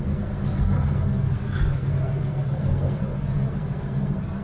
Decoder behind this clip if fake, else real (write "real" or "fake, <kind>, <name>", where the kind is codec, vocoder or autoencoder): fake, codec, SNAC